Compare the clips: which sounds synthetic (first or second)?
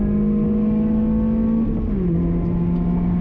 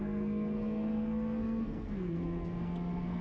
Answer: second